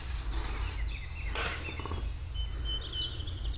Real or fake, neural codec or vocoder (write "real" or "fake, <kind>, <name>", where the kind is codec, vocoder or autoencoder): real